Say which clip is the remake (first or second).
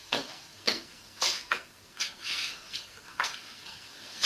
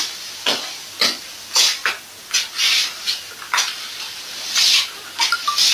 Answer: first